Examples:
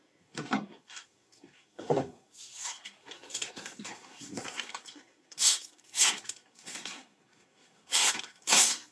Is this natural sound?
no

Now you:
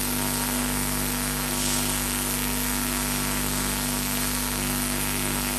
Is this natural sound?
no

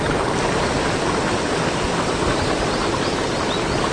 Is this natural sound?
yes